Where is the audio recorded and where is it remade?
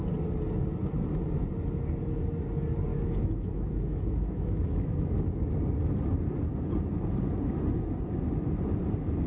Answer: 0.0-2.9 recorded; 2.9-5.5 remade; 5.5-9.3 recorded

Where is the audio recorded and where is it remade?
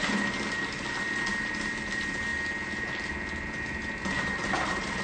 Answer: 0.0-5.0 recorded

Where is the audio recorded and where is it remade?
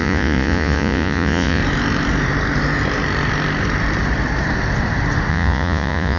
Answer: 0.0-1.6 remade; 1.6-5.3 recorded; 5.3-6.2 remade